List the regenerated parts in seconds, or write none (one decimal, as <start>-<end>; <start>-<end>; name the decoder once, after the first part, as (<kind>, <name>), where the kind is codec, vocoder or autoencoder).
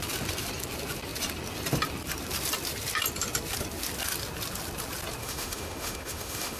5.2-6.6 (autoencoder, DAC-VAE)